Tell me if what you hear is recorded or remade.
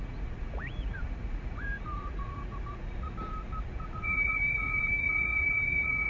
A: remade